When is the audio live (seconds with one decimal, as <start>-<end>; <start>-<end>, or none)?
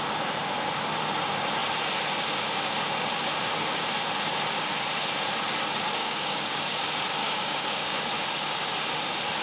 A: 0.0-6.0; 6.7-7.2; 8.0-9.4